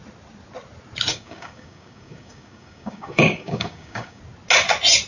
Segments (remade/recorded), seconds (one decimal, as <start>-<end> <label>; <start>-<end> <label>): 0.0-1.1 recorded; 1.1-4.2 remade; 4.2-5.1 recorded